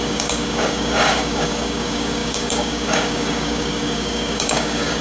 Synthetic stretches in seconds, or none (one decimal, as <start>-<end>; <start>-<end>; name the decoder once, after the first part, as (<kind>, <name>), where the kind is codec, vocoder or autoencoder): 0.0-5.0 (codec, DAC)